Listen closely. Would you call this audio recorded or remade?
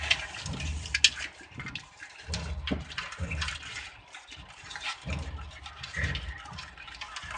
recorded